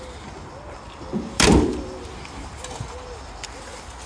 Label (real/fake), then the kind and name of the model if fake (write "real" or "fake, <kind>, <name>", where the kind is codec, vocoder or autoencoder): real